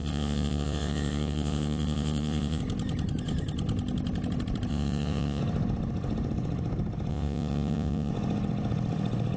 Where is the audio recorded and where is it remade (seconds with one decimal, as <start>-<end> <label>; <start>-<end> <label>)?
0.0-2.6 remade; 2.6-4.7 recorded; 4.7-5.4 remade; 5.4-7.1 recorded; 7.1-8.1 remade; 8.1-9.4 recorded